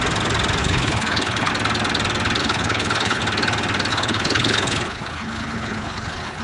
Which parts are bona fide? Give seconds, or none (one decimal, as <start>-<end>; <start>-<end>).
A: 0.0-0.6; 1.5-2.4; 3.2-3.9